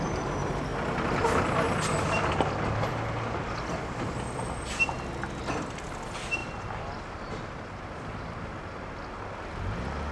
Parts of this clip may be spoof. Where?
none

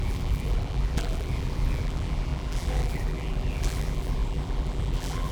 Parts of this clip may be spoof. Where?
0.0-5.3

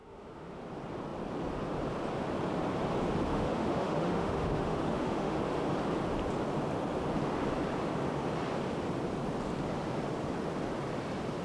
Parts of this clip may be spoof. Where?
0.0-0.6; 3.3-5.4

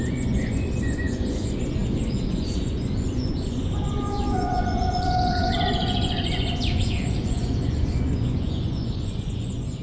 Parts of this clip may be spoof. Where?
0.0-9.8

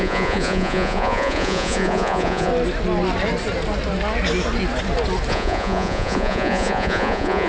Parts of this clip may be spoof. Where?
0.0-2.5; 5.3-7.5

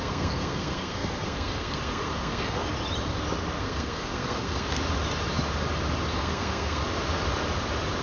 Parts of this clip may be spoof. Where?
0.0-2.6; 3.6-4.8; 6.1-6.8